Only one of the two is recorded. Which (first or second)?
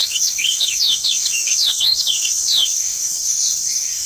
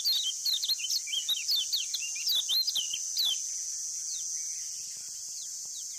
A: second